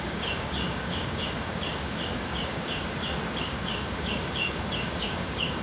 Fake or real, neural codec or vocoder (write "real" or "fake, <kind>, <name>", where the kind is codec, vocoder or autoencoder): fake, codec, DAC